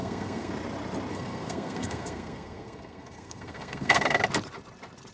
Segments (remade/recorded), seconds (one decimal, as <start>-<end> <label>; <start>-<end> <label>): 0.0-0.5 remade; 0.5-1.1 recorded; 1.1-4.2 remade; 4.2-5.1 recorded